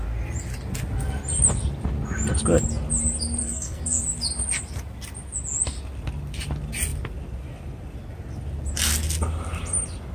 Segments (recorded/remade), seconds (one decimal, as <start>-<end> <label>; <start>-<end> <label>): 0.0-3.4 recorded; 3.4-4.0 remade; 4.0-10.1 recorded